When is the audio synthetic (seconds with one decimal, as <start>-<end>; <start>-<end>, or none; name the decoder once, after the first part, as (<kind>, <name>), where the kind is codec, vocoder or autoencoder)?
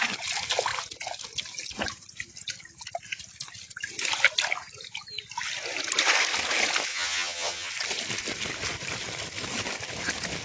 6.9-7.7 (vocoder, HiFi-GAN)